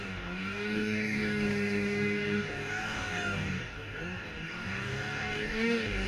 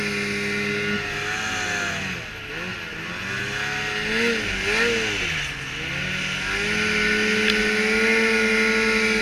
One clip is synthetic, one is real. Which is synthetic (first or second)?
first